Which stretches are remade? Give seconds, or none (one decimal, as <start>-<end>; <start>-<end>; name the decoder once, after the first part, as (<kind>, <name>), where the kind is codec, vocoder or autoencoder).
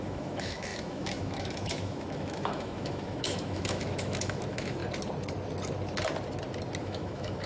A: 0.0-4.8 (autoencoder, DAC-VAE); 6.8-7.5